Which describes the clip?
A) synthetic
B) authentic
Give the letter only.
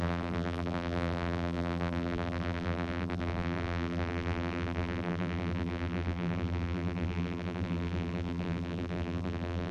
A